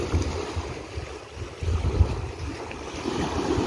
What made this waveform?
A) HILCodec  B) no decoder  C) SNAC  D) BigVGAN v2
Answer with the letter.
B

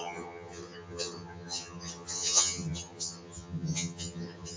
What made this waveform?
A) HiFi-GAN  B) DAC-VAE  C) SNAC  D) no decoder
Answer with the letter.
A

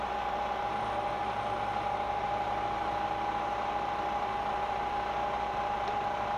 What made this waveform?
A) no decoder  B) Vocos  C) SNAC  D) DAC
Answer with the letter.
A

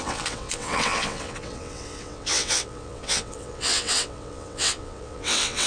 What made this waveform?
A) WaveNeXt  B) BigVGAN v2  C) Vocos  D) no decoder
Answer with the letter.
A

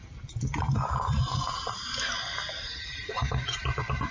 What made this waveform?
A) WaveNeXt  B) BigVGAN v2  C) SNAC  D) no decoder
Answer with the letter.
D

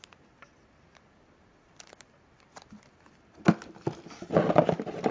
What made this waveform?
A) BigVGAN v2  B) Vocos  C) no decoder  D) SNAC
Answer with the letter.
C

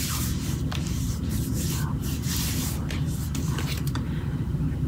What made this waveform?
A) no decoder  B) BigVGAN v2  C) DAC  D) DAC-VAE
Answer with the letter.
B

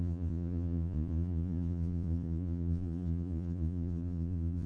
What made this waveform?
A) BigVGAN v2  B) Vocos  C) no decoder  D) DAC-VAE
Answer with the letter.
B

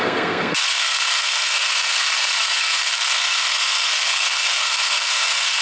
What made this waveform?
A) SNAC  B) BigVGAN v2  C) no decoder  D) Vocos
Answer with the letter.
A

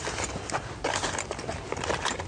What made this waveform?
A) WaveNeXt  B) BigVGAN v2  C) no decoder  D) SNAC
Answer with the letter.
C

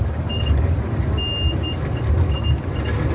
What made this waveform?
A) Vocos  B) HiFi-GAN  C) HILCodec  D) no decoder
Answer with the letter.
D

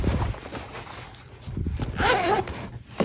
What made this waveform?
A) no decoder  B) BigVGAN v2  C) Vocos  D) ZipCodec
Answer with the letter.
A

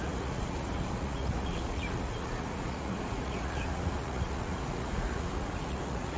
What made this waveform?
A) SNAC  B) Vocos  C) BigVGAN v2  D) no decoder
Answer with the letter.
B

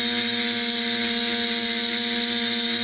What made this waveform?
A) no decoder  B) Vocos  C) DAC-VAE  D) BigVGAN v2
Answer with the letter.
A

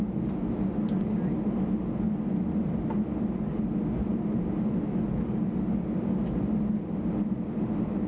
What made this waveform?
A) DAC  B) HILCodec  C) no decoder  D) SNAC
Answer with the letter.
C